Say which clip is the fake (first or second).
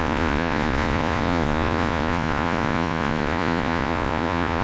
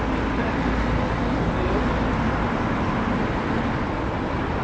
first